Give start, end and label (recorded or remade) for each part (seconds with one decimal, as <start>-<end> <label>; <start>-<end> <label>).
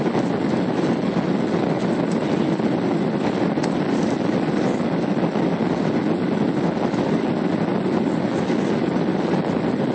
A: 0.0-9.9 recorded